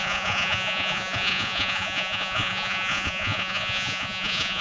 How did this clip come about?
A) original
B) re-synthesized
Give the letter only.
B